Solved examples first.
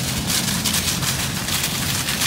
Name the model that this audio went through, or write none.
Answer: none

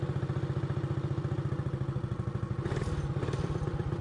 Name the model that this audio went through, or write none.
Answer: none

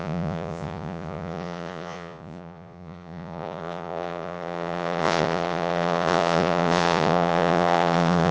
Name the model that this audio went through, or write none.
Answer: vocoder, Vocos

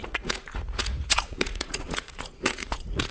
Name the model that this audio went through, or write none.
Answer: vocoder, Vocos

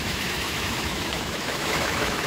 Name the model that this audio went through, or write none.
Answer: autoencoder, DAC-VAE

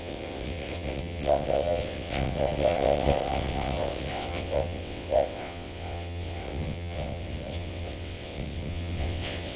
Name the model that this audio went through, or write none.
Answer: vocoder, WaveNeXt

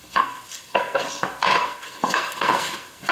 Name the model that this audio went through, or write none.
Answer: codec, SNAC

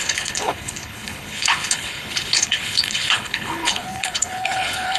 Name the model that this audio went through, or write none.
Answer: codec, HILCodec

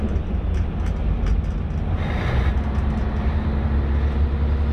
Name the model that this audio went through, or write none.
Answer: none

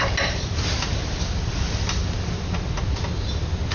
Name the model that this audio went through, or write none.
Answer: none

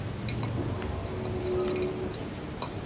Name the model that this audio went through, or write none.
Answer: none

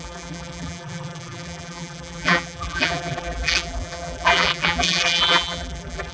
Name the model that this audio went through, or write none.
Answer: vocoder, BigVGAN v2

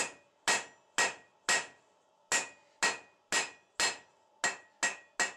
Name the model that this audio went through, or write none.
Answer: none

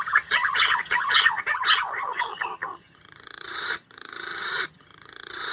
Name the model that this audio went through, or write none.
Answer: vocoder, HiFi-GAN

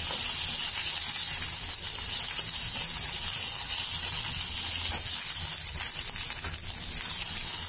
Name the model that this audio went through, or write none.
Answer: none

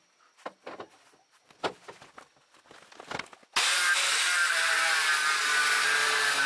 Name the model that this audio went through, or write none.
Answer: none